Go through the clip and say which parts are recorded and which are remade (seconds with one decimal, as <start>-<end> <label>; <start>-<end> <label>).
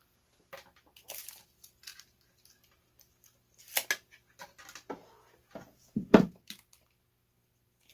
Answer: 0.0-5.0 recorded; 5.0-6.4 remade; 6.4-7.9 recorded